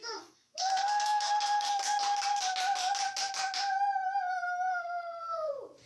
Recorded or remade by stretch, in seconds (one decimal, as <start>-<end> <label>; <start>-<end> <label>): 0.0-1.7 remade; 1.7-4.7 recorded; 4.7-5.5 remade; 5.5-5.9 recorded